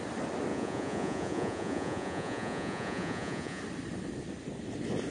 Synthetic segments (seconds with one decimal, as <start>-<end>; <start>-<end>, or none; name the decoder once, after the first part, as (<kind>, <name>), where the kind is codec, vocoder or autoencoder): 0.5-3.6 (vocoder, Vocos)